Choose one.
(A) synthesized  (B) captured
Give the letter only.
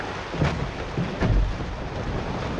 B